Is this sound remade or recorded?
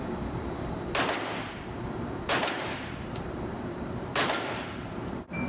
remade